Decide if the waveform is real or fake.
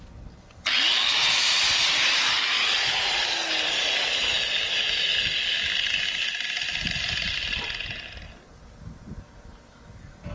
real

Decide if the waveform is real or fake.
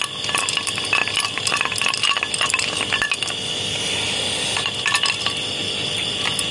real